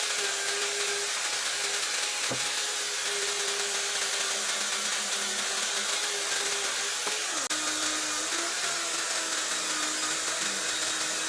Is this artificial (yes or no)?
no